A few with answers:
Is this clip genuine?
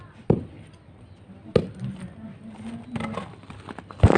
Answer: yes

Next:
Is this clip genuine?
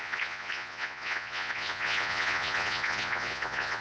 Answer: no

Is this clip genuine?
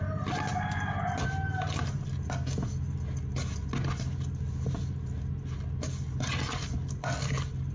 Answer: yes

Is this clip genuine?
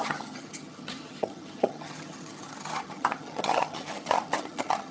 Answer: no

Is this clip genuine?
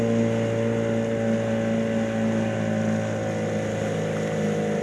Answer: yes